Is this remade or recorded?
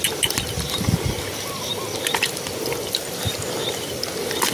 remade